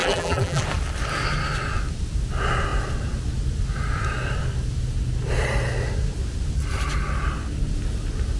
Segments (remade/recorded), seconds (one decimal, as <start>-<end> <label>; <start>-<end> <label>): 0.0-0.6 remade; 0.6-8.4 recorded